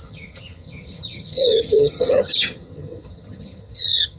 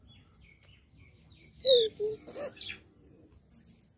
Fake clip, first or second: first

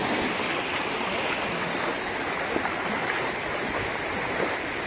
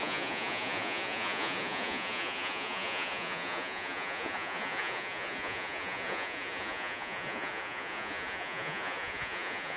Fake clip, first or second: second